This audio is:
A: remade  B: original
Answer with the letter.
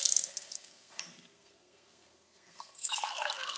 A